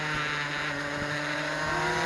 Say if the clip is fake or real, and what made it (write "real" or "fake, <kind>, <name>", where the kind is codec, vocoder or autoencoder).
real